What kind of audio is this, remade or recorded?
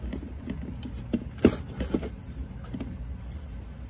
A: recorded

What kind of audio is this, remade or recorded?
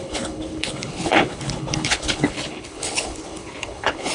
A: remade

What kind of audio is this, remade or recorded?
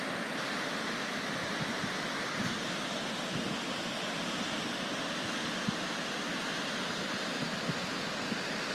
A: recorded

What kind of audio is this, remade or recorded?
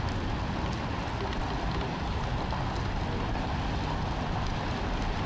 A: recorded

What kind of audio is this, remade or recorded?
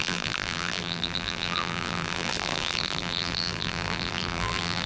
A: remade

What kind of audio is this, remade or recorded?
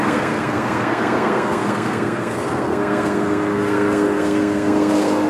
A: remade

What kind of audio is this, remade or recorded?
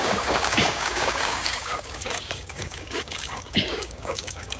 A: remade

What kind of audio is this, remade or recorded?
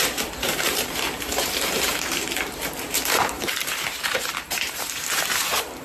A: remade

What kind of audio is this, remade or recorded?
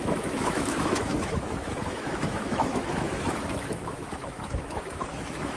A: remade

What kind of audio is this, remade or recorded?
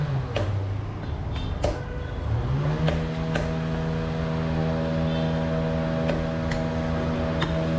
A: recorded